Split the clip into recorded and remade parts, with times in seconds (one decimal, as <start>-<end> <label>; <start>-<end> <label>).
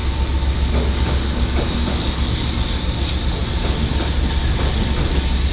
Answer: 0.0-5.5 recorded